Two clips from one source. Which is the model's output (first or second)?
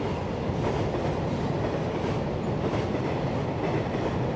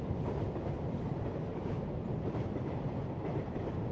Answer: second